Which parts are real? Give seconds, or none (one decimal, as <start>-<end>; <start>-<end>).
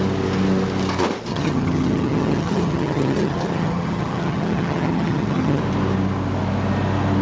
0.0-1.3; 5.6-7.2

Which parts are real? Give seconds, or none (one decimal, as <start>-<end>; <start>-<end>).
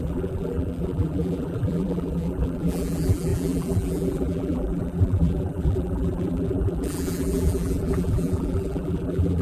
none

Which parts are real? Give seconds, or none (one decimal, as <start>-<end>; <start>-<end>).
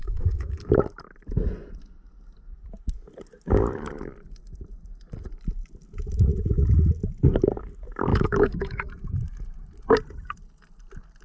0.7-8.1; 8.9-11.2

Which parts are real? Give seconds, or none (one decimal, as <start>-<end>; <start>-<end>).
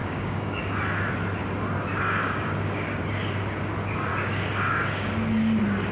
0.6-2.2; 3.0-4.1; 5.3-5.9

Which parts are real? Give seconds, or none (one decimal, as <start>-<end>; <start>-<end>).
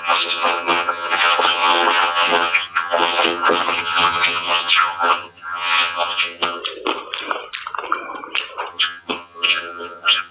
6.6-8.7